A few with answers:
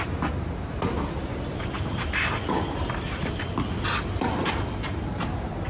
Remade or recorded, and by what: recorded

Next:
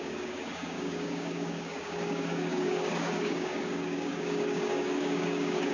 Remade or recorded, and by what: remade, codec, DAC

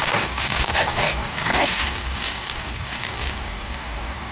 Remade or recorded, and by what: remade, codec, DAC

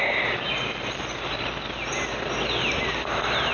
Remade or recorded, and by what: recorded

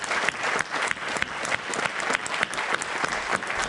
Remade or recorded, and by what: recorded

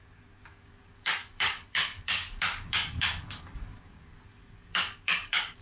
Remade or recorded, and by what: remade, codec, DAC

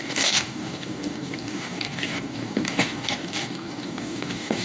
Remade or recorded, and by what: remade, codec, DAC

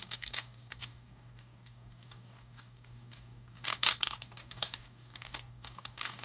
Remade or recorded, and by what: remade, codec, DAC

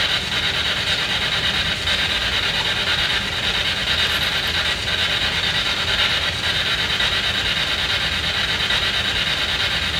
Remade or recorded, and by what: recorded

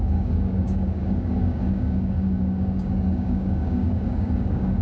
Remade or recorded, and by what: remade, codec, DAC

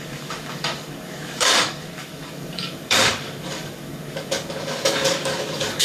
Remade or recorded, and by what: remade, codec, DAC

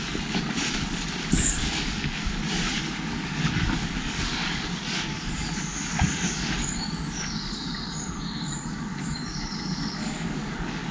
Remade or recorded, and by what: remade, codec, DAC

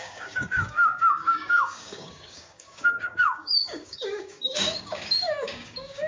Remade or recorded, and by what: remade, codec, DAC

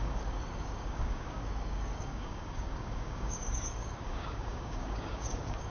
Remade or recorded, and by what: remade, codec, DAC